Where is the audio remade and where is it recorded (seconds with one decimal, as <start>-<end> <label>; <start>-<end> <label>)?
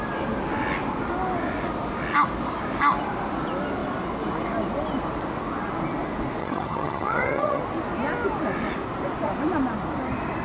0.0-6.4 recorded; 6.4-7.6 remade; 7.6-10.4 recorded